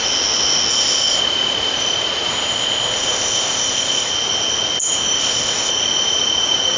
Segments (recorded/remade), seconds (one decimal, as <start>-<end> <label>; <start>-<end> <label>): 0.0-0.7 recorded; 0.7-1.2 remade; 1.2-2.3 recorded; 2.3-4.1 remade; 4.1-5.2 recorded; 5.2-5.7 remade; 5.7-6.8 recorded